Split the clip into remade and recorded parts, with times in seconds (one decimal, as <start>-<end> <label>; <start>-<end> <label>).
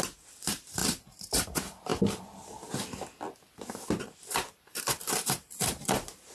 0.0-1.9 remade; 1.9-3.9 recorded; 3.9-6.3 remade